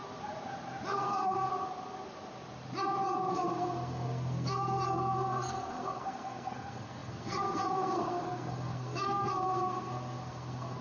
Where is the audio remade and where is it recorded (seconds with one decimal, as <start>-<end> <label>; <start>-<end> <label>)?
0.0-0.9 recorded; 0.9-1.5 remade; 1.5-3.3 recorded; 3.3-10.8 remade